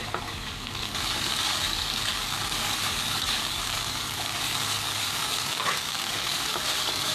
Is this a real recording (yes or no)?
no